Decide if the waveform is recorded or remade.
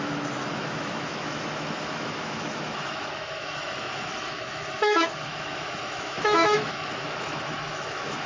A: remade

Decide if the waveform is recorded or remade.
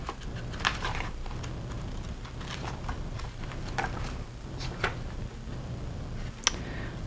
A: recorded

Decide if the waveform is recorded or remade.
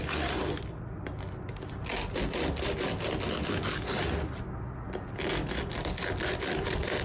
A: recorded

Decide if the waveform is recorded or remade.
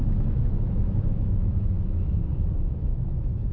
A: remade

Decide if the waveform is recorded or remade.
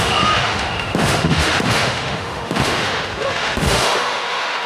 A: remade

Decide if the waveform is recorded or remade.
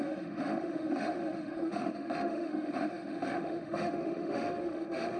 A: remade